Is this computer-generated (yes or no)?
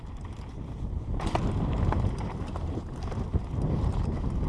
no